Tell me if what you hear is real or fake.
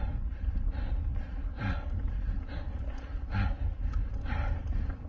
real